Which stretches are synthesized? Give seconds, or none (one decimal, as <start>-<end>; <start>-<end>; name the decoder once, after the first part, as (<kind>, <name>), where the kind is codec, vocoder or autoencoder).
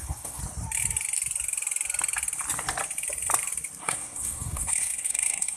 0.0-0.4 (codec, SNAC); 3.8-5.6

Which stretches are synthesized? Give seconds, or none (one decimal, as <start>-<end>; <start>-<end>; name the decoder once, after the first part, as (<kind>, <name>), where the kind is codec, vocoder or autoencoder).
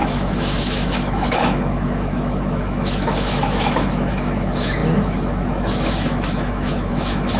0.0-7.4 (autoencoder, DAC-VAE)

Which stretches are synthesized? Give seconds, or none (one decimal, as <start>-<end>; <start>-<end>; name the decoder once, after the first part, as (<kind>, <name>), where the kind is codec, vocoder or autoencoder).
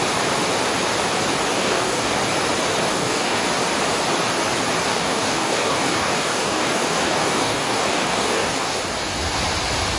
1.5-2.2 (codec, DAC); 2.9-3.4; 4.9-8.8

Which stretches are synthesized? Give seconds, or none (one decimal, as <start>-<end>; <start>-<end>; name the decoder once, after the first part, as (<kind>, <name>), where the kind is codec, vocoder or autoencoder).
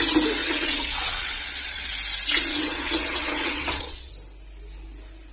0.4-1.9 (vocoder, WaveNeXt); 2.5-4.1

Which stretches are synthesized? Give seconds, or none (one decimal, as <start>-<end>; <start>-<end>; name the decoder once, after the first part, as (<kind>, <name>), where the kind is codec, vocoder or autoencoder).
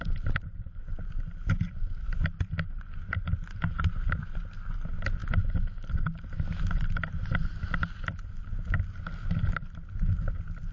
none